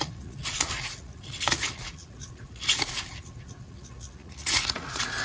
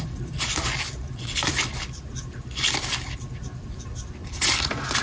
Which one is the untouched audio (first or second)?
second